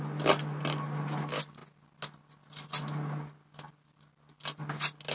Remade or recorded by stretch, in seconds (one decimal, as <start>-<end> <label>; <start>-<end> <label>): 0.0-5.1 recorded